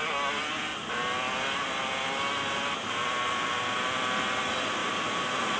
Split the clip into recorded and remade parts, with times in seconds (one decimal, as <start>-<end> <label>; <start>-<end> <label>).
0.0-5.6 recorded

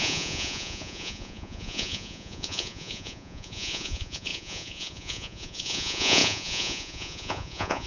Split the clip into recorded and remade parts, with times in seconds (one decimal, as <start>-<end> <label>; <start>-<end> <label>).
0.0-7.9 remade

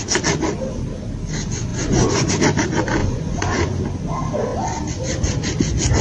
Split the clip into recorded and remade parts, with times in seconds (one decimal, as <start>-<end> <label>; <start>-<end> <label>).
0.0-1.7 recorded; 1.7-2.3 remade; 2.3-3.0 recorded; 3.0-3.8 remade; 3.8-6.0 recorded

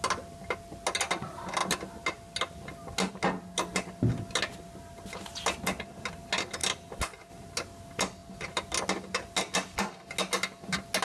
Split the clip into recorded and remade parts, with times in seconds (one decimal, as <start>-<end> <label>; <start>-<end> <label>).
0.0-11.0 recorded

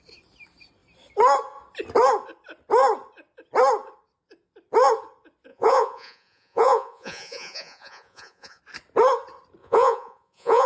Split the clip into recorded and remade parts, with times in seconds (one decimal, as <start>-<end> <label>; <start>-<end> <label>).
0.0-5.5 recorded; 5.5-8.6 remade; 8.6-9.6 recorded; 9.6-10.7 remade